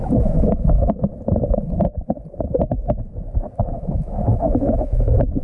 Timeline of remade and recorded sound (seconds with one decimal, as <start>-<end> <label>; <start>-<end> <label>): 0.0-1.1 remade; 1.1-3.6 recorded; 3.6-5.4 remade